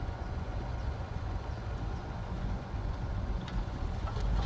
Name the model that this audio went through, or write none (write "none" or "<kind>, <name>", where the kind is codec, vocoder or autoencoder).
vocoder, Vocos